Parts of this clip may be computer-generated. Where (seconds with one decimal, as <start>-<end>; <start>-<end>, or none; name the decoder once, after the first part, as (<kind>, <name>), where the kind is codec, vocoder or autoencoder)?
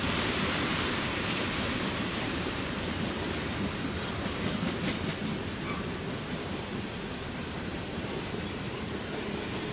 0.0-5.2 (vocoder, BigVGAN v2); 5.7-9.7